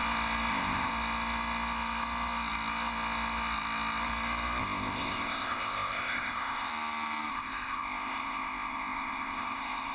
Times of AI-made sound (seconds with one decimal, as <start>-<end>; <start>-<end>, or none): 0.5-0.9; 4.6-6.7; 7.3-9.9